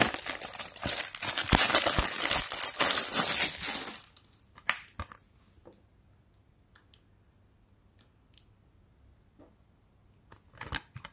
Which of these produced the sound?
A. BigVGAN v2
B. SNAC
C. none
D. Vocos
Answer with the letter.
C